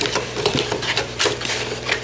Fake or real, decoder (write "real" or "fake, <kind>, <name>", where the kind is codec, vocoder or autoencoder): fake, vocoder, BigVGAN v2